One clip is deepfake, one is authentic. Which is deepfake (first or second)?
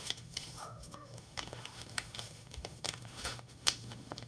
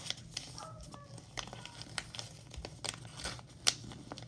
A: first